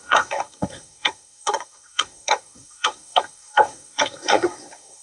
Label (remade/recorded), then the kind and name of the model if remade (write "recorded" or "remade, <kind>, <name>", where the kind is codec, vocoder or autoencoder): remade, codec, SNAC